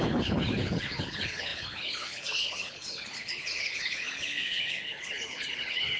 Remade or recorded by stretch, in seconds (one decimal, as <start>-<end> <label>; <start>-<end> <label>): 0.0-6.0 remade